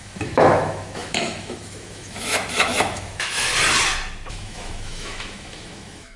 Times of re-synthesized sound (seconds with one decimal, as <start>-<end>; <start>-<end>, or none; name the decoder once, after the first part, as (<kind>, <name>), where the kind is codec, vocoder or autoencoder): 0.0-3.5 (autoencoder, DAC-VAE); 4.3-6.2